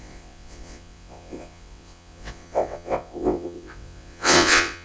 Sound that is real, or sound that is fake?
fake